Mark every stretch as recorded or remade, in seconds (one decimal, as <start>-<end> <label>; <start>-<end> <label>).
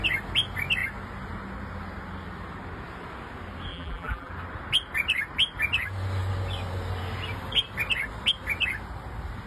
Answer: 0.0-3.7 recorded; 3.7-4.3 remade; 4.3-9.5 recorded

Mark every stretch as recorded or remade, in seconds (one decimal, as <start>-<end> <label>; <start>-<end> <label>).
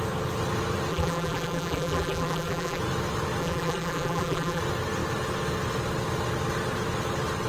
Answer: 0.0-0.9 recorded; 0.9-2.8 remade; 2.8-3.4 recorded; 3.4-4.6 remade; 4.6-7.5 recorded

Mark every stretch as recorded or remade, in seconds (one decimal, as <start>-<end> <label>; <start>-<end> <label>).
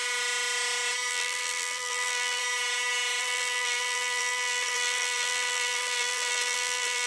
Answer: 0.0-1.1 recorded; 1.1-2.4 remade; 2.4-3.2 recorded; 3.2-7.1 remade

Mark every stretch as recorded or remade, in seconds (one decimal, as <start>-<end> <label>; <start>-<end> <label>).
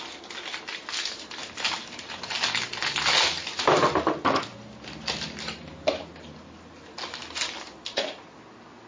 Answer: 0.0-8.9 recorded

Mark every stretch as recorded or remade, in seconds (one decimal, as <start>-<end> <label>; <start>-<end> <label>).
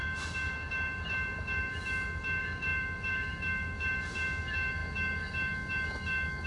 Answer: 0.0-6.5 remade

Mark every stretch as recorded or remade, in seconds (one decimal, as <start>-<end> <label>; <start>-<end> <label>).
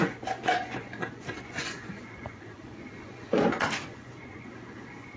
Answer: 0.0-5.2 remade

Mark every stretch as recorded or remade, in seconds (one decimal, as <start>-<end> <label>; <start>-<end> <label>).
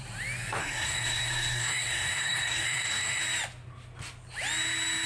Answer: 0.0-0.6 recorded; 0.6-3.2 remade; 3.2-5.1 recorded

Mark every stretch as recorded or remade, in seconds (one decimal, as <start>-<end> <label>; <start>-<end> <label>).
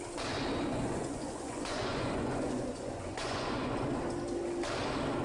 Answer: 0.0-0.7 recorded; 0.7-3.8 remade; 3.8-5.2 recorded